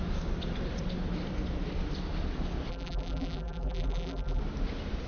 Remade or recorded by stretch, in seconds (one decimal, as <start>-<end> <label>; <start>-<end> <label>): 0.0-2.7 recorded; 2.7-4.4 remade; 4.4-5.1 recorded